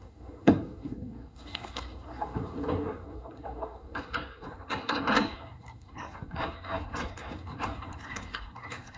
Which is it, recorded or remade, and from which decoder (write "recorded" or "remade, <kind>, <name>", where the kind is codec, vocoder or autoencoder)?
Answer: remade, codec, SNAC